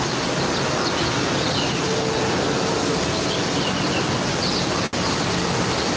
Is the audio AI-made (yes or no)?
no